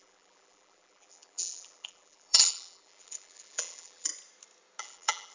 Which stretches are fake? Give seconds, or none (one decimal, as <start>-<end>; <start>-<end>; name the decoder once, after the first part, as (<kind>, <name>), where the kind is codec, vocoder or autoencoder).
0.0-4.1 (vocoder, BigVGAN v2); 4.8-5.3